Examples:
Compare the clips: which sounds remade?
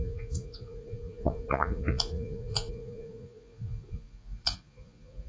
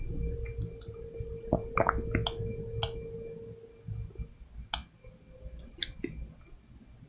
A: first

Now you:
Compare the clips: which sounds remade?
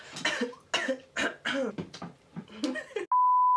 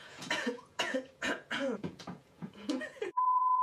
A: second